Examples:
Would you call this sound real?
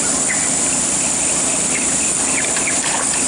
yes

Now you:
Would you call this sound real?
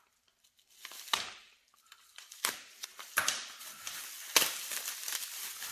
no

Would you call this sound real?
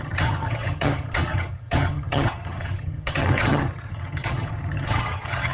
no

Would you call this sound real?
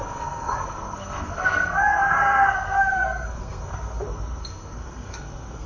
no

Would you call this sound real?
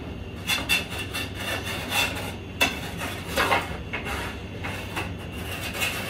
yes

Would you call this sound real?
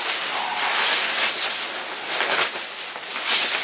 yes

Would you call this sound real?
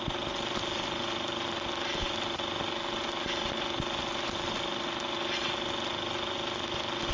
yes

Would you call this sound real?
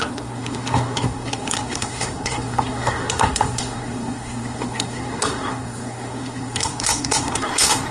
no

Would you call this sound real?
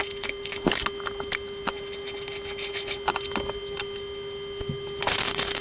yes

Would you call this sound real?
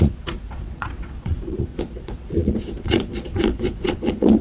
no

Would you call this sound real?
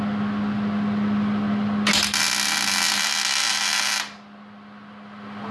yes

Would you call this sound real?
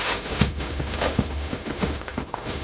no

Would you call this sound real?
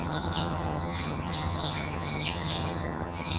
no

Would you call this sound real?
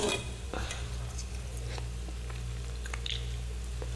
yes